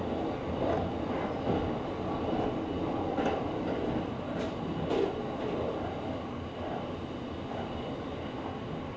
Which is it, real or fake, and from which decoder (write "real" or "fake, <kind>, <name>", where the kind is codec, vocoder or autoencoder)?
real